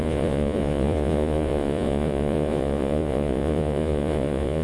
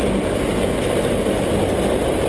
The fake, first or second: first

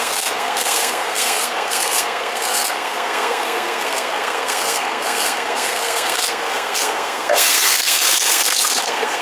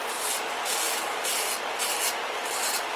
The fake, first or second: first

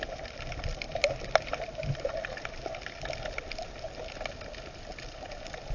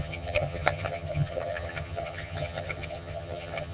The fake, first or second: second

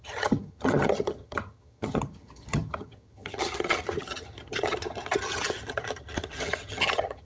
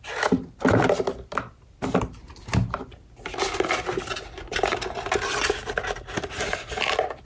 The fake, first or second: first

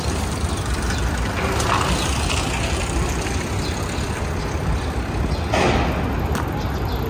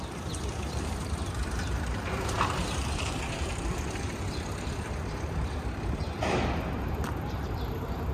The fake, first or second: second